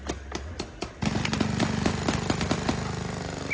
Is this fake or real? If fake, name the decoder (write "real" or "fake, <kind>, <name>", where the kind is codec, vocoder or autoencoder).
real